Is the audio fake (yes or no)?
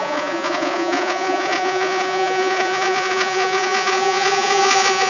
yes